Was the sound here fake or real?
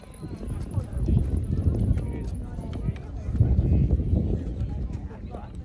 real